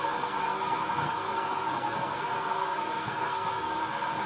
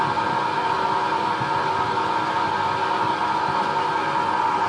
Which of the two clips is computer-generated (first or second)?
first